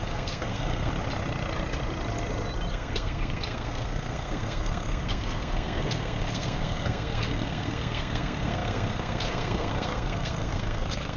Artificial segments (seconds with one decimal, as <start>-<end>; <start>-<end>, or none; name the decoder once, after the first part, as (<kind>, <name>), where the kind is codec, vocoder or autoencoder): 0.0-0.9 (codec, SNAC); 2.7-11.2